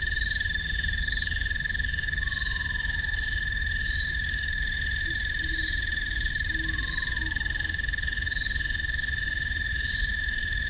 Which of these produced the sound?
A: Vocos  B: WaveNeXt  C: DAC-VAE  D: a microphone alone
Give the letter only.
C